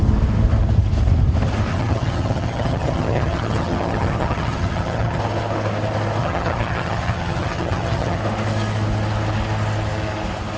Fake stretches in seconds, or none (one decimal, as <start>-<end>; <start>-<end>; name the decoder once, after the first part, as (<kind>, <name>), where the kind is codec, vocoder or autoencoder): 1.7-5.2 (vocoder, HiFi-GAN); 6.2-8.2